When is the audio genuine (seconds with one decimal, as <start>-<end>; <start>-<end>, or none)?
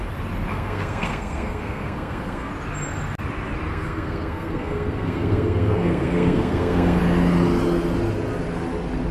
0.0-0.5; 2.5-3.7; 7.0-9.1